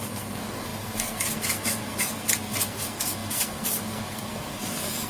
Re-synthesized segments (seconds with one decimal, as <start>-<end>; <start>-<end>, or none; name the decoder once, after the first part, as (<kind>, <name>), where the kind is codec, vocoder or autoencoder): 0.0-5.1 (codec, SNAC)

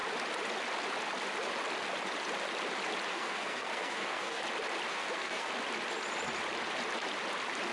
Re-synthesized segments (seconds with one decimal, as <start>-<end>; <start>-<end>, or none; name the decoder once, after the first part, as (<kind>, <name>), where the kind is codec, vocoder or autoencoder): 3.1-4.4 (codec, SNAC); 4.9-5.5

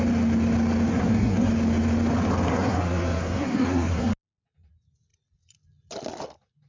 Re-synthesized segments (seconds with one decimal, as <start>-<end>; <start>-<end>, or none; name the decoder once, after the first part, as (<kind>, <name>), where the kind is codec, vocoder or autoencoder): 0.9-1.5 (codec, SNAC); 2.5-4.1